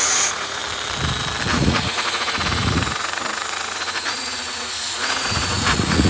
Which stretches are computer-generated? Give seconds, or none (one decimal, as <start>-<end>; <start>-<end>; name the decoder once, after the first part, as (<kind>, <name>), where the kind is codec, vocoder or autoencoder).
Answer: 0.0-0.6 (vocoder, Vocos); 1.5-6.1